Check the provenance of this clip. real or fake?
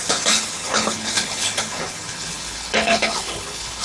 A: fake